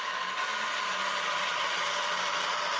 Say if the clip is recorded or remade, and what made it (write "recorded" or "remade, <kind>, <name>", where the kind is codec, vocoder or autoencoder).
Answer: recorded